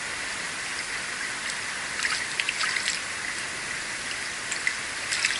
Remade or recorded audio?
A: recorded